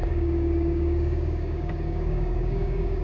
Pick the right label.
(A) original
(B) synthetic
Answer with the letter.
B